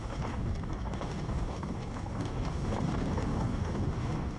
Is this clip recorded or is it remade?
remade